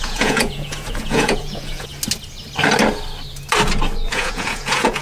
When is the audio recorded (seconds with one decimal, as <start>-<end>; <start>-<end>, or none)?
1.9-4.1